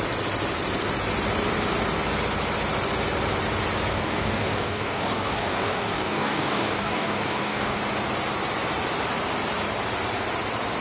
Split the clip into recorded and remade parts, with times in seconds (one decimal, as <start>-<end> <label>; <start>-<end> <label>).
0.0-3.9 recorded; 3.9-7.8 remade; 7.8-10.8 recorded